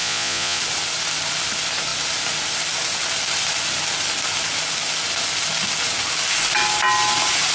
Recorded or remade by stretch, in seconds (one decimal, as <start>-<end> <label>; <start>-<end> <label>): 0.0-0.6 remade; 0.6-7.5 recorded